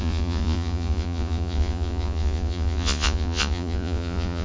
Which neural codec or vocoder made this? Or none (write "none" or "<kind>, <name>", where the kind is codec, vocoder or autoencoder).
vocoder, Vocos